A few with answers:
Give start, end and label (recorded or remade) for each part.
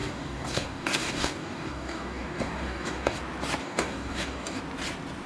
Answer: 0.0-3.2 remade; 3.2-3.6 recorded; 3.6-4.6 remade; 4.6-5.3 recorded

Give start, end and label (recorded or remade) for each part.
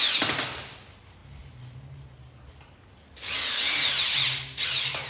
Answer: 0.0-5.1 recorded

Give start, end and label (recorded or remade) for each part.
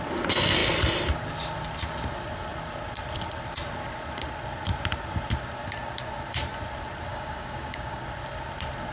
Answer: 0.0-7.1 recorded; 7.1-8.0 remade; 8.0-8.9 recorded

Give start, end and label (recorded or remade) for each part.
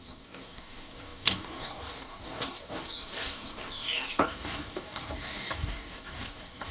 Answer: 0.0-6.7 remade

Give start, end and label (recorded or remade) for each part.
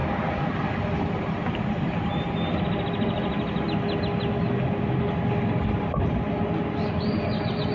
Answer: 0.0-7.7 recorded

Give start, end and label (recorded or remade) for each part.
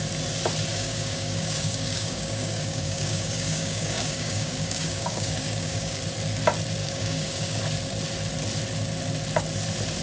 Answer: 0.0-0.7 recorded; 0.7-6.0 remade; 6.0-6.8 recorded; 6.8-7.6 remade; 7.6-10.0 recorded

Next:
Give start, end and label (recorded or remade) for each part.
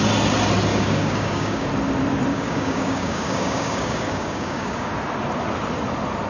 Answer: 0.0-0.7 recorded; 0.7-1.7 remade; 1.7-2.3 recorded; 2.3-4.9 remade; 4.9-6.3 recorded